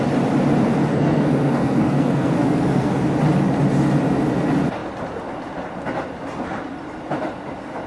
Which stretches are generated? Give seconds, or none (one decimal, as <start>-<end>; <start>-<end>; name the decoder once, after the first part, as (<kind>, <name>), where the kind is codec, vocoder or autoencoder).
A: 0.9-3.0 (codec, SNAC)